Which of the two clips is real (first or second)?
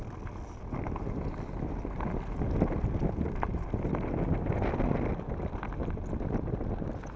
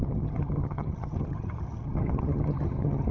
first